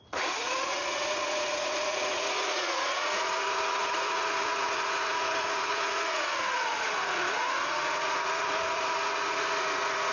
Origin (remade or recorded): remade